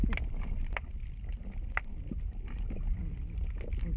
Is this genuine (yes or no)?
yes